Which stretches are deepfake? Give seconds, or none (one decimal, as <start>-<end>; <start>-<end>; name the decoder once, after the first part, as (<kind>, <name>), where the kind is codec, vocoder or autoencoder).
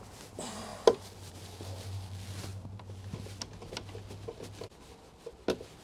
none